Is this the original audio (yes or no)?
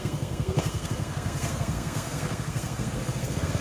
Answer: no